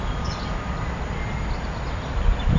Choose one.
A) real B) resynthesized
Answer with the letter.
A